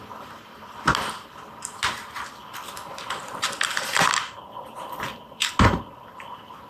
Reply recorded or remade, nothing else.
recorded